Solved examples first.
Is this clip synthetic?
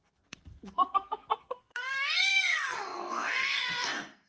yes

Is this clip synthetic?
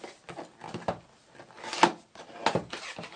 no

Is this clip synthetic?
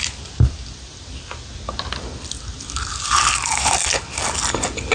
no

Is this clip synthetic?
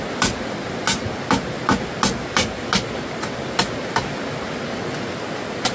no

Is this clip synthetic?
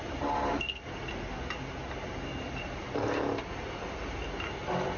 no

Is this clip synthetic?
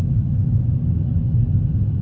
no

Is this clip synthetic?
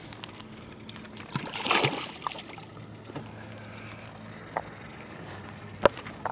no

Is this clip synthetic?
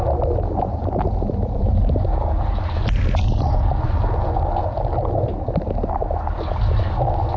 no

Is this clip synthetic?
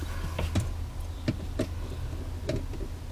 no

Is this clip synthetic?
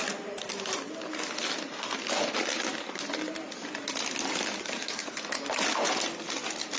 no